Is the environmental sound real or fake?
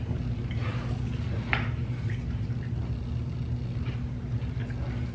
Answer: real